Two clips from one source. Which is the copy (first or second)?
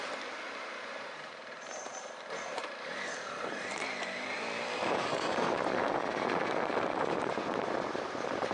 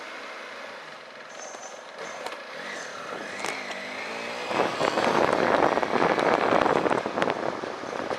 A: first